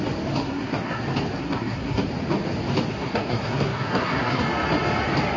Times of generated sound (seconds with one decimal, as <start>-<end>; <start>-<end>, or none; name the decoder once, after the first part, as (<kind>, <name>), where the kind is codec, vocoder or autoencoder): 0.4-1.0 (codec, SNAC); 1.4-2.1; 2.9-4.4

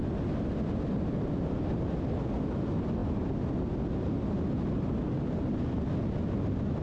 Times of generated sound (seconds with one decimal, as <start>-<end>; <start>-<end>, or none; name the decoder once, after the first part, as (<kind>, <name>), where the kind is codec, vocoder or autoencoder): none

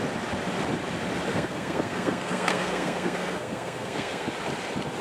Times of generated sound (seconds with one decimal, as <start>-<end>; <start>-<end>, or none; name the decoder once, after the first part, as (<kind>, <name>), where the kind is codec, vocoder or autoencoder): 1.3-4.3 (codec, SNAC)

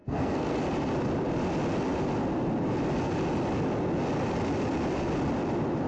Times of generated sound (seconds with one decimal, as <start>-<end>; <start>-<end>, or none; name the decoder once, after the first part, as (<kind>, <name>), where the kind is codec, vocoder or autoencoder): 0.0-0.6 (codec, SNAC)

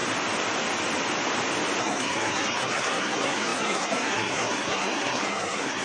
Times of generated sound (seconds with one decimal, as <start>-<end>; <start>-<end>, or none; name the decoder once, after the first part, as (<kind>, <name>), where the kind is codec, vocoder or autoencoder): 1.8-5.8 (codec, SNAC)

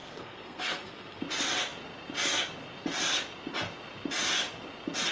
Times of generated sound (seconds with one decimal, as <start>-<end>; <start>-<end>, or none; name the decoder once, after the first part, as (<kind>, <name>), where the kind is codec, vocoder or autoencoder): 0.0-1.2 (codec, SNAC)

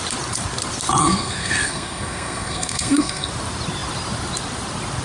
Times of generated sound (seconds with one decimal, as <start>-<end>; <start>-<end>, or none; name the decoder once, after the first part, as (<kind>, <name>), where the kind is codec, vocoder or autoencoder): 1.0-3.3 (codec, SNAC)